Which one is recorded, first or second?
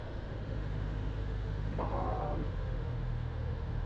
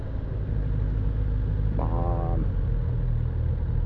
second